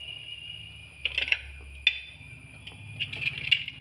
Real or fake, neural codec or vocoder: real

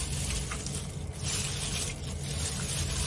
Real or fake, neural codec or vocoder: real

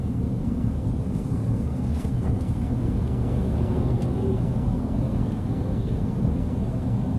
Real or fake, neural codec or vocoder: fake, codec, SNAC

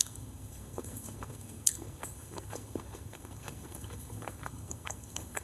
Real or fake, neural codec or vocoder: fake, codec, SNAC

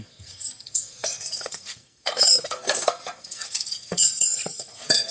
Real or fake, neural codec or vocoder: fake, codec, SNAC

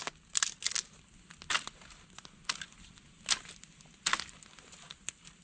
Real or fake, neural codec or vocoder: real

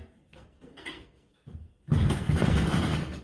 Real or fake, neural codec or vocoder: fake, codec, SNAC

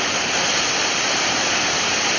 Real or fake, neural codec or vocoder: real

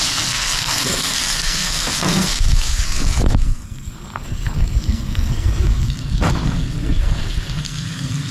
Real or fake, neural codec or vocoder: fake, codec, SNAC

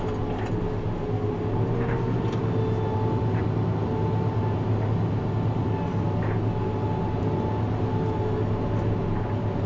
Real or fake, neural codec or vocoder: real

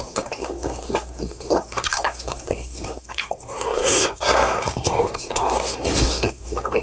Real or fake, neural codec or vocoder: fake, codec, SNAC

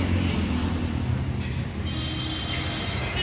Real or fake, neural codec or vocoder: real